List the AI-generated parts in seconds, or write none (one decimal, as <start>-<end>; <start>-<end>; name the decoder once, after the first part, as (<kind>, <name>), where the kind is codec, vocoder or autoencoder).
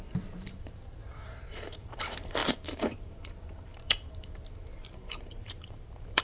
0.0-6.2 (vocoder, BigVGAN v2)